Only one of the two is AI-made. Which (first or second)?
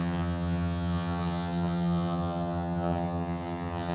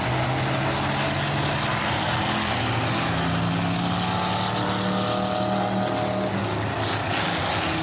first